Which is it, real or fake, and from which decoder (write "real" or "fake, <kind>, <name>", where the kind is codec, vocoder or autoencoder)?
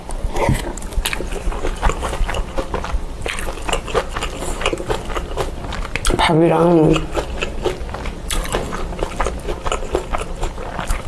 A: real